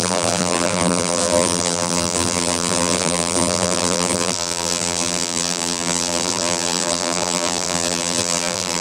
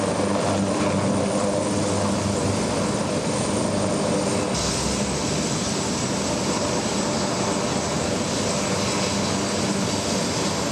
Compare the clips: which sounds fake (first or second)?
first